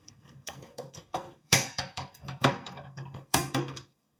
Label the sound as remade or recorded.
remade